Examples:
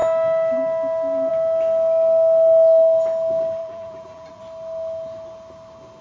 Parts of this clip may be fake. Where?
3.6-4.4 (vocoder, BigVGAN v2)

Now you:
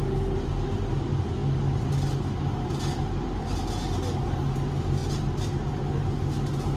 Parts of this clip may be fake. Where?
none

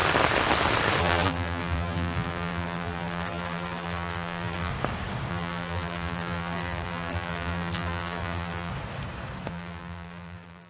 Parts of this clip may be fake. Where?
1.0-4.7 (vocoder, BigVGAN v2); 5.3-8.7; 9.5-10.7

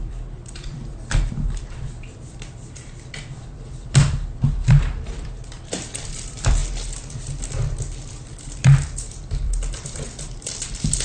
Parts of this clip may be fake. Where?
0.0-6.6 (vocoder, BigVGAN v2); 8.4-11.0

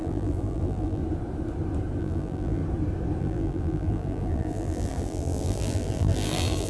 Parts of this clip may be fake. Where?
0.0-1.0 (vocoder, BigVGAN v2); 2.0-2.6; 3.2-6.7

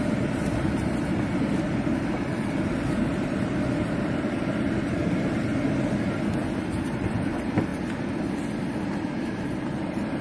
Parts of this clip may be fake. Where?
0.0-5.5 (vocoder, BigVGAN v2); 6.7-7.7; 9.6-10.2

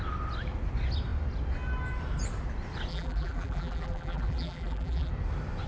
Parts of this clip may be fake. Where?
2.9-5.1 (vocoder, BigVGAN v2)